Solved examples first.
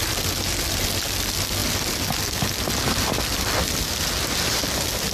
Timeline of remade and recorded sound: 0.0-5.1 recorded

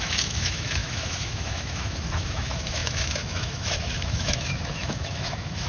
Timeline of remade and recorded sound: 0.0-5.7 remade